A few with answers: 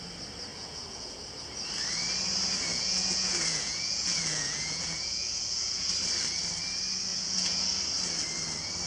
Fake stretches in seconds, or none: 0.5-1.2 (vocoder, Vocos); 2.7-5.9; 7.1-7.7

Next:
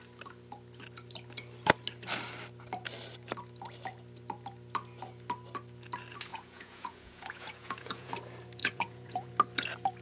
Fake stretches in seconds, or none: 6.3-8.1 (vocoder, Vocos); 8.6-9.3

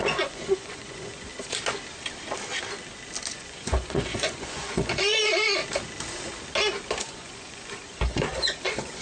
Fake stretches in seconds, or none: 0.0-1.3 (vocoder, Vocos); 3.3-5.6; 7.0-9.0